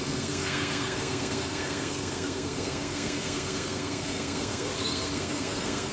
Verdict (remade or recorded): remade